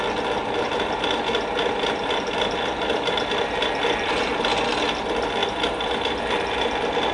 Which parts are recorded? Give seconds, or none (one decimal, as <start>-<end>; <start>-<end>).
0.0-7.1